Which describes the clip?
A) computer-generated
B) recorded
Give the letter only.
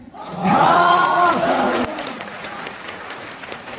A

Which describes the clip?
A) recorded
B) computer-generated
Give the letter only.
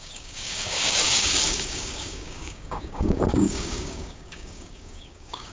B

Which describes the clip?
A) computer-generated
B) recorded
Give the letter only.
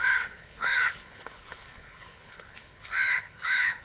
A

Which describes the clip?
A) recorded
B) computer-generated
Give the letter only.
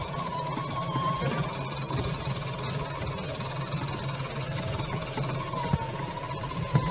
A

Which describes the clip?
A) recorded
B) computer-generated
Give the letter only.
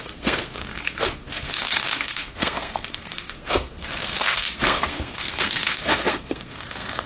B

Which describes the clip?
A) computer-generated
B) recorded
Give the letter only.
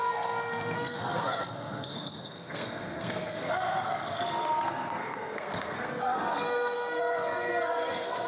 A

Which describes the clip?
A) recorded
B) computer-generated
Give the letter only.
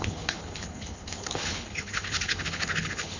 B